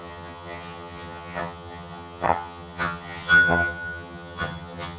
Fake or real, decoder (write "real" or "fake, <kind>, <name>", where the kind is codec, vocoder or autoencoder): fake, vocoder, HiFi-GAN